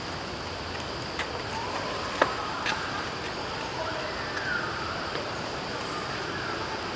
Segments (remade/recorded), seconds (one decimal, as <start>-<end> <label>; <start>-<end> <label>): 0.0-4.5 recorded; 4.5-5.7 remade; 5.7-7.0 recorded